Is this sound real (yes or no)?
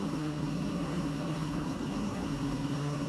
no